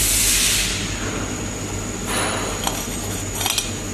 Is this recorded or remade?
recorded